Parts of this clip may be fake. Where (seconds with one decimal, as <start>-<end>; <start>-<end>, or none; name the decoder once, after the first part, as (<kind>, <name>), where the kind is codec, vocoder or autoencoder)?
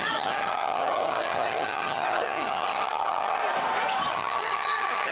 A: 0.0-3.4 (vocoder, HiFi-GAN); 4.1-5.1